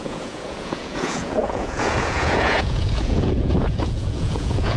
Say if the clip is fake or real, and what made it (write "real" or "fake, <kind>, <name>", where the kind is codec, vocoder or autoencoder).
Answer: fake, vocoder, Vocos